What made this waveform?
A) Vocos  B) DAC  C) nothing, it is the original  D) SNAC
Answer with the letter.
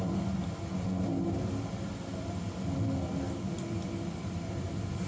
C